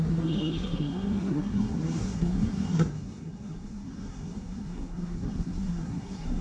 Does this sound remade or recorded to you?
remade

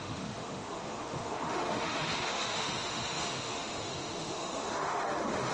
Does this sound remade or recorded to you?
remade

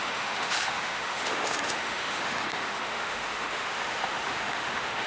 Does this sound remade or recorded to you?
remade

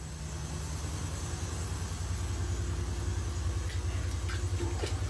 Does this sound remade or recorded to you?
recorded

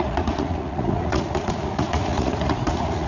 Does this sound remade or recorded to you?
remade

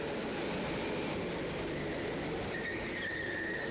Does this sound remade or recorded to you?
recorded